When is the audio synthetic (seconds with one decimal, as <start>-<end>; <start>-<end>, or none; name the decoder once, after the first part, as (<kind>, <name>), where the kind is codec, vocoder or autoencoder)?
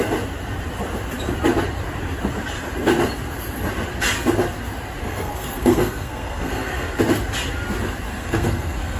5.0-7.0 (codec, SNAC); 8.1-9.0